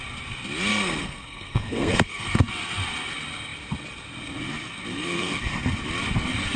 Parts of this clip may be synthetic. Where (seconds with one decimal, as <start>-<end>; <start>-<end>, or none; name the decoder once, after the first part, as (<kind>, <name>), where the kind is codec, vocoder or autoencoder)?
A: 0.7-2.5 (codec, SNAC); 4.9-5.5